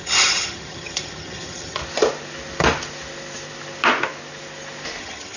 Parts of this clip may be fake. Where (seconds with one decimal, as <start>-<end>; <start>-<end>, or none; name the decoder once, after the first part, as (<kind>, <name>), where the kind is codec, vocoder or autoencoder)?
0.0-1.8 (vocoder, HiFi-GAN); 5.0-5.4